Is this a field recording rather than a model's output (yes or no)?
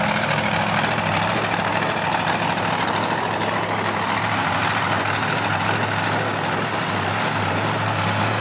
yes